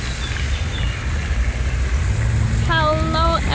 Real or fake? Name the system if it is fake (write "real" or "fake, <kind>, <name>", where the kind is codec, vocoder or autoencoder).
real